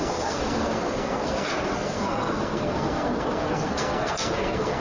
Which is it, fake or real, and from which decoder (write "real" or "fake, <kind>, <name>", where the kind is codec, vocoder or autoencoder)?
fake, codec, SNAC